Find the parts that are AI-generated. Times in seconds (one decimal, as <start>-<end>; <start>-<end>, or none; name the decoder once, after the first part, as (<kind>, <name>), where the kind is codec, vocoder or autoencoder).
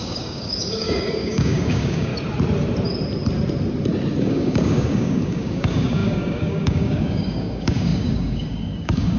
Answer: 0.0-2.1 (codec, DAC); 4.2-9.2